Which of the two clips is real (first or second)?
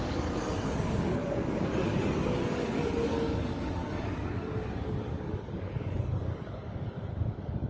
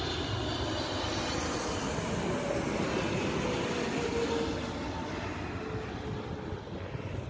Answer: second